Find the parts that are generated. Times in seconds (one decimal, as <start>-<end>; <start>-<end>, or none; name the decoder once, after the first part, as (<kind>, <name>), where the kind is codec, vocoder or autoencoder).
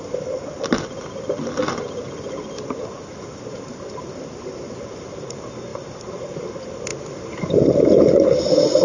5.7-6.4 (vocoder, BigVGAN v2)